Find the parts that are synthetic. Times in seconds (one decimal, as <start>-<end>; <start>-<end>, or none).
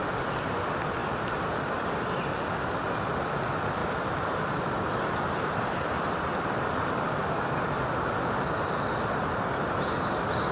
1.0-1.9; 3.8-8.0